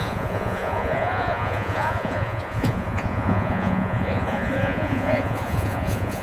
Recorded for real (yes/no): no